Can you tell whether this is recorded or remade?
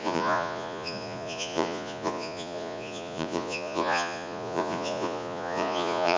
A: remade